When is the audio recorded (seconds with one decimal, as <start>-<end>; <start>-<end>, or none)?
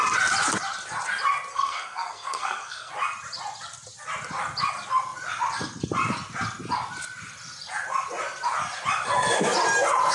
0.0-1.5; 2.9-10.1